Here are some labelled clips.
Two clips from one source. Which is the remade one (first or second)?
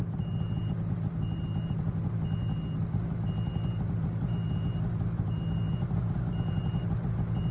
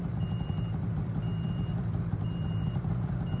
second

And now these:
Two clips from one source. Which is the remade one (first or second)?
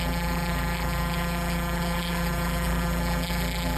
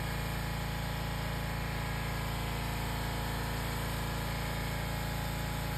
first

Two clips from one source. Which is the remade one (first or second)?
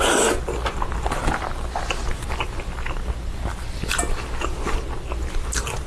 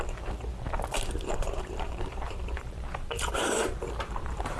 second